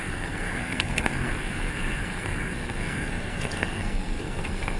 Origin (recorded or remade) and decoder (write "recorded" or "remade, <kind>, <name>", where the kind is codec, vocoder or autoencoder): remade, codec, SNAC